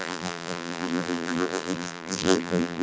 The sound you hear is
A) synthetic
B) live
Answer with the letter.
A